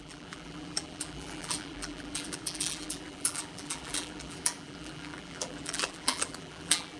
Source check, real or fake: fake